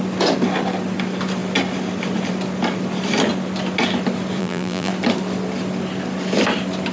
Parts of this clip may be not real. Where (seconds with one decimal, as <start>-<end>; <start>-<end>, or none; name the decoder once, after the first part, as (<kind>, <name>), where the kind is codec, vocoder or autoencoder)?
4.4-4.9 (vocoder, BigVGAN v2)